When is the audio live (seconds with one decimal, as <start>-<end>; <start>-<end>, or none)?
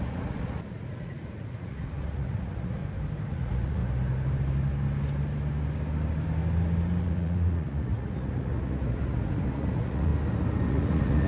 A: 2.8-3.3; 3.8-7.0; 10.1-10.7